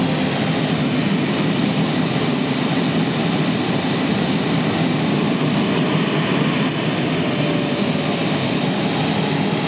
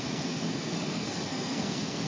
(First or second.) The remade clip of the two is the second